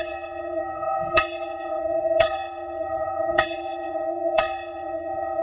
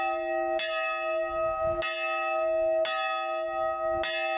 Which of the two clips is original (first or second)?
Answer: second